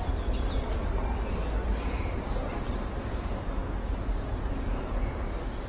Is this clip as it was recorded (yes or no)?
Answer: yes